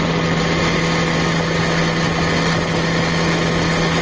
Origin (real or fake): real